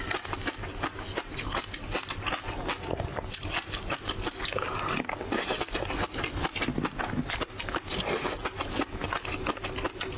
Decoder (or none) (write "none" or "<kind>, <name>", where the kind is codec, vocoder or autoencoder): none